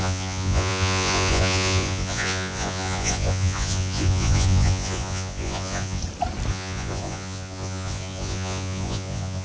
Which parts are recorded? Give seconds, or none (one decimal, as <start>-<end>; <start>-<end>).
6.0-6.5